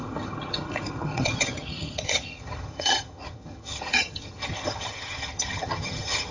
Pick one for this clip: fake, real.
fake